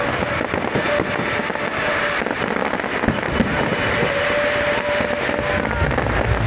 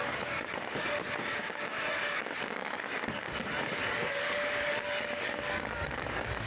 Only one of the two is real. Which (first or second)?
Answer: first